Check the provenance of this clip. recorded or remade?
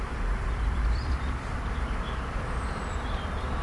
remade